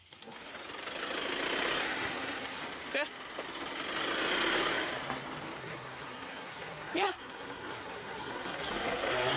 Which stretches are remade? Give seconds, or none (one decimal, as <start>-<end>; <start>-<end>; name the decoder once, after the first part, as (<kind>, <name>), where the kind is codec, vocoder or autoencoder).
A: 0.0-0.5 (codec, SNAC); 1.8-2.6; 5.6-9.4